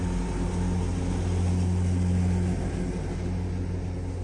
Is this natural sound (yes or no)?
yes